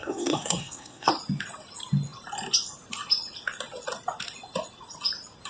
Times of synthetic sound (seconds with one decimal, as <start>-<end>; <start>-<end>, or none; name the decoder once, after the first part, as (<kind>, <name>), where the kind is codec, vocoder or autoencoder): 0.0-1.1 (codec, SNAC)